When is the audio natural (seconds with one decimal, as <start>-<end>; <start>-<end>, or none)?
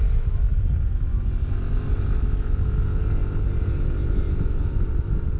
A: 0.0-5.4